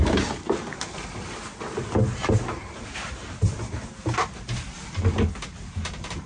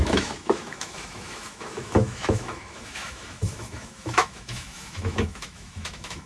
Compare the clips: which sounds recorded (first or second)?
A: first